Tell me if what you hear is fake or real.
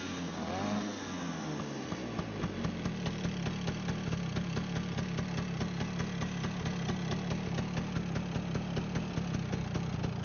real